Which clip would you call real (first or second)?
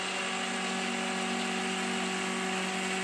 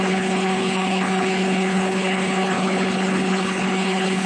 first